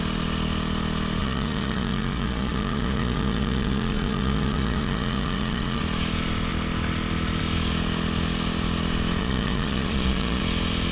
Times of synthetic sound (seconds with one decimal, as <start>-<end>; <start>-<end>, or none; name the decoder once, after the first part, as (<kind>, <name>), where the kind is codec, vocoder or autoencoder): 1.2-5.8 (vocoder, Vocos); 9.2-10.4

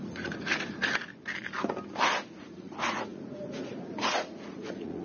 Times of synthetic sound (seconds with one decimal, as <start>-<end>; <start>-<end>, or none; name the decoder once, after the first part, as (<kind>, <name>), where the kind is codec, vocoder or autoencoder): 0.0-1.1 (vocoder, Vocos); 2.4-5.0

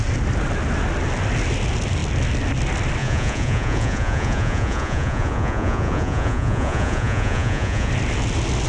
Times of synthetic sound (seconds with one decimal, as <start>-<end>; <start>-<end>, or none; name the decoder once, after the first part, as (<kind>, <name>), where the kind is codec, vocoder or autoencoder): 3.0-7.9 (vocoder, Vocos)

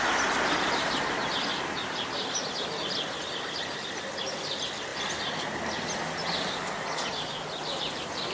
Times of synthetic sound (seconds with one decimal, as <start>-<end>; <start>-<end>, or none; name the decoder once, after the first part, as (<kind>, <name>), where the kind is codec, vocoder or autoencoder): none

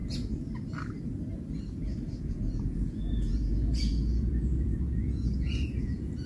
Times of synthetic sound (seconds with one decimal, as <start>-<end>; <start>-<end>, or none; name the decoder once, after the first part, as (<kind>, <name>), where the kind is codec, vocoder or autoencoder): 2.3-6.3 (vocoder, Vocos)

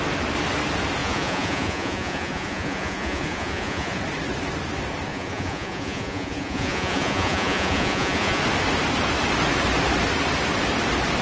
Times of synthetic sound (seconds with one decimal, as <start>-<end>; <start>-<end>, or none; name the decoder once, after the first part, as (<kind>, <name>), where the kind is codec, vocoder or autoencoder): 1.0-4.0 (vocoder, Vocos); 5.1-8.4